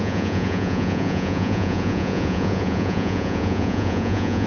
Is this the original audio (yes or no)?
no